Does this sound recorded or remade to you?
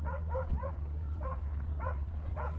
remade